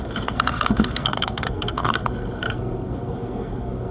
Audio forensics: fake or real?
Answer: fake